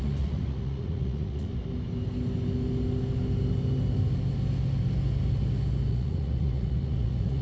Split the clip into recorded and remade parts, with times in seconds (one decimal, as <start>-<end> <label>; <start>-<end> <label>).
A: 0.0-1.5 remade; 1.5-5.9 recorded; 5.9-7.4 remade